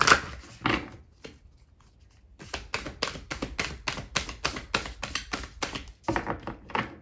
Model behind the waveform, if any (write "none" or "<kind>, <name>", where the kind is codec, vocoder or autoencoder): none